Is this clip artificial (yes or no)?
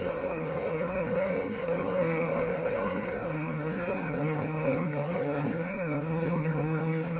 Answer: yes